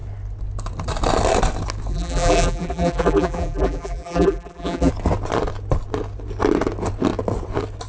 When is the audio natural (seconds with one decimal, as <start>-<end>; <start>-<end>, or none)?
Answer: 0.0-1.9; 4.9-7.9